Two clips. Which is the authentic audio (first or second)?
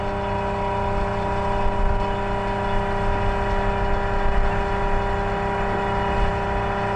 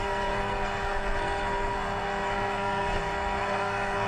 first